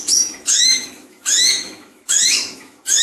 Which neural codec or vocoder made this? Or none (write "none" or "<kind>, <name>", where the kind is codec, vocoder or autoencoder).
autoencoder, DAC-VAE